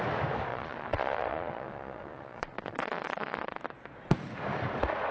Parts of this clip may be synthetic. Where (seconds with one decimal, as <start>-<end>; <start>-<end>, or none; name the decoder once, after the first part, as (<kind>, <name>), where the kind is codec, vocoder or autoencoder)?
0.5-3.6 (vocoder, Vocos)